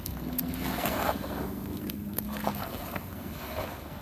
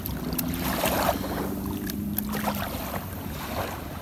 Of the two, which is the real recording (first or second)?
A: second